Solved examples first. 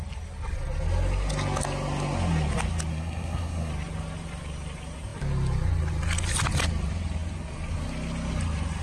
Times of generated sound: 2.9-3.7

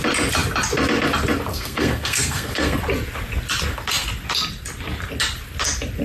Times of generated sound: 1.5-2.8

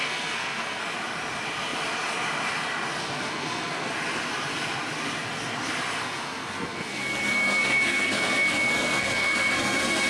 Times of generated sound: 0.0-0.8; 3.0-3.9; 6.0-10.1

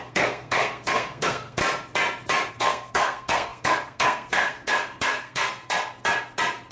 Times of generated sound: 0.0-1.6; 2.5-5.6

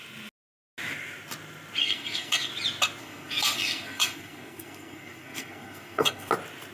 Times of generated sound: 1.8-2.5; 3.0-6.3